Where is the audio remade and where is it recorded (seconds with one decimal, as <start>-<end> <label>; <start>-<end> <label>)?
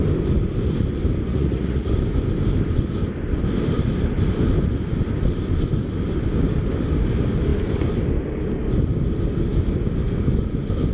0.0-1.3 recorded; 1.3-1.9 remade; 1.9-10.9 recorded